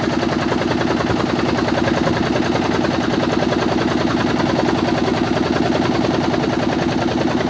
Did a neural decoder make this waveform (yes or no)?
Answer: no